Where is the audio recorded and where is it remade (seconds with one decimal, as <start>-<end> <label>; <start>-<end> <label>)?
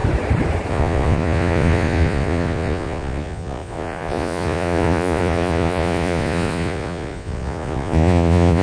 0.0-0.7 recorded; 0.7-8.6 remade